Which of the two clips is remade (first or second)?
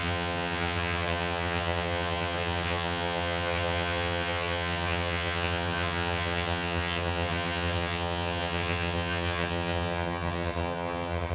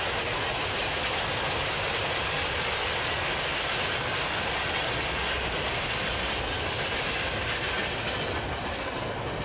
first